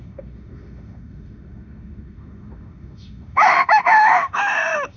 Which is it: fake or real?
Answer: fake